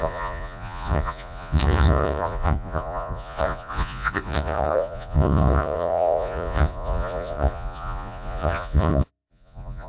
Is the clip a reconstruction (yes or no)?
yes